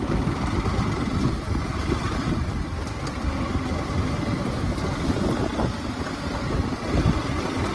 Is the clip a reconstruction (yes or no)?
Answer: no